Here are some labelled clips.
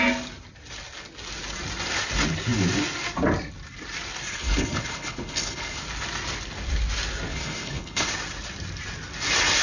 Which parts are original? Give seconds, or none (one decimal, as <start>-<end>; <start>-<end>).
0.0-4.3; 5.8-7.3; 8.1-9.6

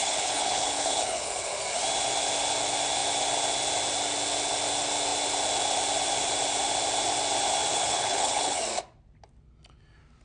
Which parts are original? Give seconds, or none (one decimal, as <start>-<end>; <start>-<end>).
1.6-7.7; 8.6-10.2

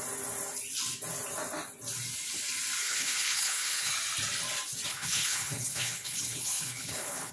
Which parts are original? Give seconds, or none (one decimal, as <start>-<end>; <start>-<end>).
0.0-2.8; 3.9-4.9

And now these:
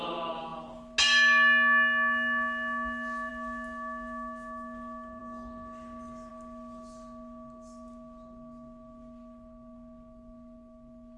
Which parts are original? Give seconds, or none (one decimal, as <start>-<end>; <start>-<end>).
0.0-11.2